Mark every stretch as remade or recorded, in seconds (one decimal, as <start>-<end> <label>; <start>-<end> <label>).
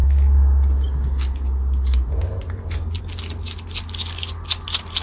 0.0-5.0 recorded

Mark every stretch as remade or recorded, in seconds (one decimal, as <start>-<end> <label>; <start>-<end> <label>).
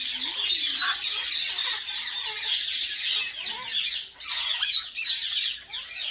0.0-1.6 recorded; 1.6-3.2 remade; 3.2-4.8 recorded; 4.8-5.4 remade; 5.4-6.1 recorded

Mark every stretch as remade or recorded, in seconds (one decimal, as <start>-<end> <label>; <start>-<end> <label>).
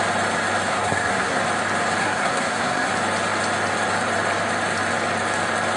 0.0-0.7 recorded; 0.7-1.4 remade; 1.4-2.0 recorded; 2.0-2.9 remade; 2.9-5.8 recorded